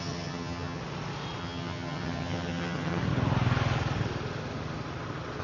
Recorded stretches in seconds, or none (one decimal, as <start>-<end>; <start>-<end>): 0.8-1.4; 3.0-5.4